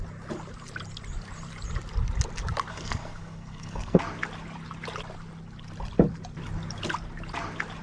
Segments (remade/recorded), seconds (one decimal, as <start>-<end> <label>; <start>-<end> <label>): 0.0-2.7 recorded; 2.7-4.0 remade; 4.0-7.8 recorded